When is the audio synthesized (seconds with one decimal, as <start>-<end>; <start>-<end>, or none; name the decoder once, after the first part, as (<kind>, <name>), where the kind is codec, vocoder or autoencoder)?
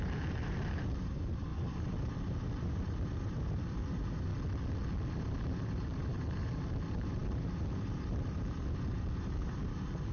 0.0-4.3 (vocoder, BigVGAN v2); 5.1-10.1